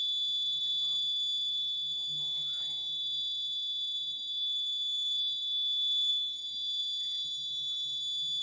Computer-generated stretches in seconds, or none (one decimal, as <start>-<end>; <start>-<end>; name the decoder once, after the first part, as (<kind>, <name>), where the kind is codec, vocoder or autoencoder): 0.0-8.4 (autoencoder, DAC-VAE)